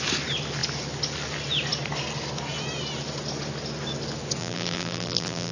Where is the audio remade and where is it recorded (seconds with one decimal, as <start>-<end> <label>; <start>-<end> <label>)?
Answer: 0.0-4.4 recorded; 4.4-5.5 remade